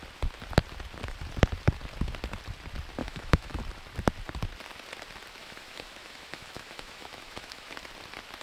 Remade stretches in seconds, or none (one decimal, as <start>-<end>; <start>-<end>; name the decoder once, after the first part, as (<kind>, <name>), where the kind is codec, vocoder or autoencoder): 3.0-3.6 (autoencoder, DAC-VAE); 5.4-7.7